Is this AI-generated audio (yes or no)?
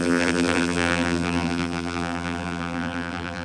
yes